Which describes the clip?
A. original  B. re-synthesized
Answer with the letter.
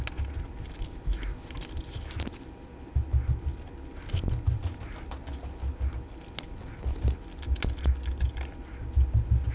A